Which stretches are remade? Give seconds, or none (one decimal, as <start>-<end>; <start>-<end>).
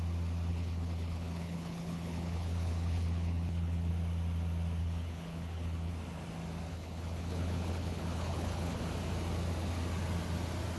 0.5-3.9; 4.8-5.9; 6.7-8.8